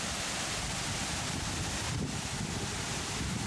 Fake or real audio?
real